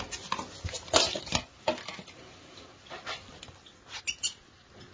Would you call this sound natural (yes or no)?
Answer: yes